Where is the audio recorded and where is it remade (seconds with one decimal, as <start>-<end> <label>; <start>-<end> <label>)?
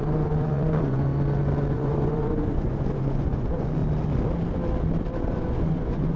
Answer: 0.0-1.1 remade; 1.1-1.7 recorded; 1.7-3.8 remade; 3.8-5.3 recorded; 5.3-6.2 remade